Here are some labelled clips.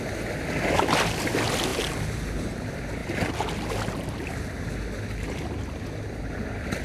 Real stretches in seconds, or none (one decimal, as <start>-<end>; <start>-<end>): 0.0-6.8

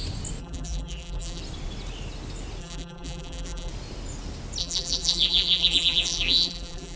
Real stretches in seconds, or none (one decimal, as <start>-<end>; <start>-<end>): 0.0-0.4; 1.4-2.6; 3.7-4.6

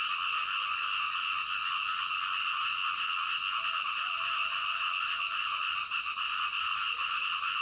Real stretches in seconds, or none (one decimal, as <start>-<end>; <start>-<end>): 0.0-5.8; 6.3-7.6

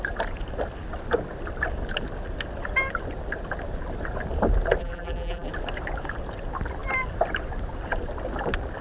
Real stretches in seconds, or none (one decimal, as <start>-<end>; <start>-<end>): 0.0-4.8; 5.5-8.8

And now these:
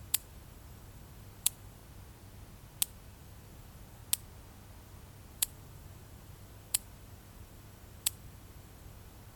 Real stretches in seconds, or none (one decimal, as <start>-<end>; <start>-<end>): 1.8-3.2; 4.0-5.3